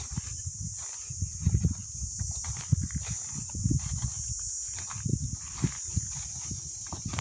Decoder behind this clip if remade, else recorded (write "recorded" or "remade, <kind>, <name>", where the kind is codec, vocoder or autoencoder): recorded